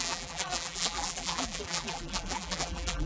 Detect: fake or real fake